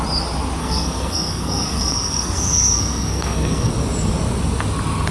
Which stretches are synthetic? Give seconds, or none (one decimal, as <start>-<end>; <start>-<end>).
0.6-3.7